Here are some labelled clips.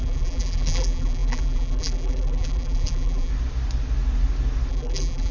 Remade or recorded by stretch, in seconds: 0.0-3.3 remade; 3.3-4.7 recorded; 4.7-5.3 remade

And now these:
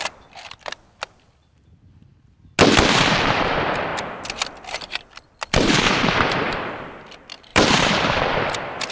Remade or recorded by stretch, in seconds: 0.0-2.1 remade; 2.1-3.3 recorded; 3.3-3.9 remade; 3.9-5.1 recorded; 5.1-8.9 remade

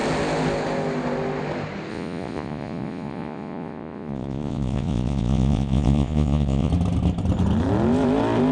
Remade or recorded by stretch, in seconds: 0.0-1.9 recorded; 1.9-6.7 remade; 6.7-8.5 recorded